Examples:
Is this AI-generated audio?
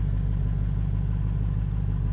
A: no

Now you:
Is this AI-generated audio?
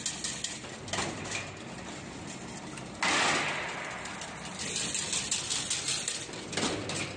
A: no